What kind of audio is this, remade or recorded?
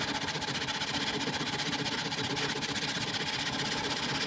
recorded